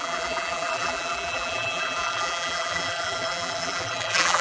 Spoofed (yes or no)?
yes